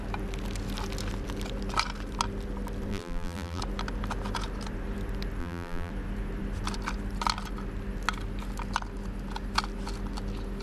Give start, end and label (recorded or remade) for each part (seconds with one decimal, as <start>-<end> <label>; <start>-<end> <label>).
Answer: 0.0-2.9 recorded; 2.9-3.6 remade; 3.6-5.4 recorded; 5.4-5.9 remade; 5.9-10.6 recorded